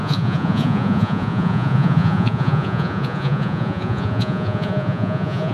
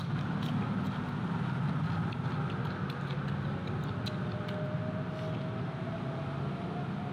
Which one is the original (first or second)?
second